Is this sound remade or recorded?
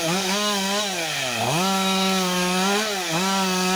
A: remade